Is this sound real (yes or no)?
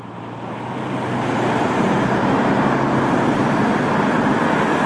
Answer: yes